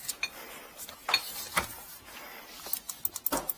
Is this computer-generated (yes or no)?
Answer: no